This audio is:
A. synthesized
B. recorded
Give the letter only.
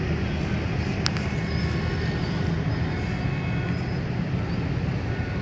B